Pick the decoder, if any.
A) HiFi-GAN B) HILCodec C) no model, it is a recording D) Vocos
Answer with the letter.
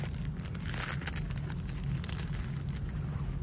C